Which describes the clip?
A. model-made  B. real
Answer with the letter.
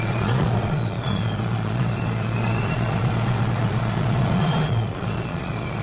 A